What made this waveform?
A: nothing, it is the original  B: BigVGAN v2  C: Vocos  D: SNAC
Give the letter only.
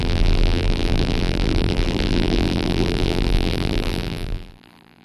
B